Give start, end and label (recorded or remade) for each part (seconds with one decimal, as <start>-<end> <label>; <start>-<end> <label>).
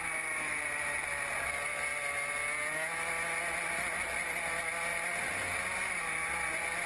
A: 0.0-4.9 recorded; 4.9-5.4 remade; 5.4-6.9 recorded